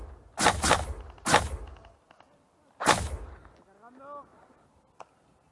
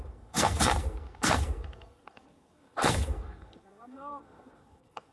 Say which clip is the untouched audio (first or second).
first